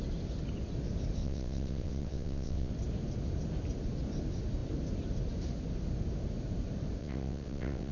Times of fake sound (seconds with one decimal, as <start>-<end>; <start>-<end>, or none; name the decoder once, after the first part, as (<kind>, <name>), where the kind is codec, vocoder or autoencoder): 1.2-2.7 (vocoder, WaveNeXt); 7.0-7.9